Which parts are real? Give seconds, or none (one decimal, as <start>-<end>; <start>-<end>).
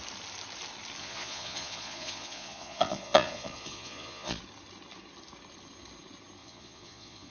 0.0-1.0; 4.4-6.4